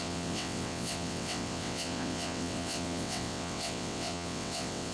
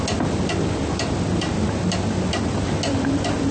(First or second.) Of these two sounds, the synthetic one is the first